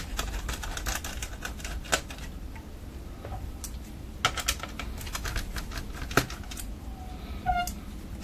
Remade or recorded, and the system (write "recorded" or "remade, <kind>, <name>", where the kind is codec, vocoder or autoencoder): recorded